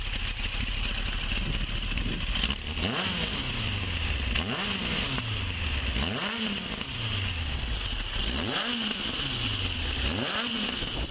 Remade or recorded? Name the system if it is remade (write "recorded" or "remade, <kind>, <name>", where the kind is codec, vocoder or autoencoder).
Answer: recorded